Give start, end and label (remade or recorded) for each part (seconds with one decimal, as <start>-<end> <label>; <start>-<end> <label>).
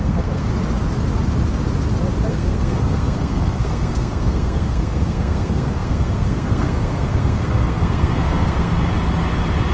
0.0-0.5 remade; 0.5-2.3 recorded; 2.3-8.7 remade; 8.7-9.7 recorded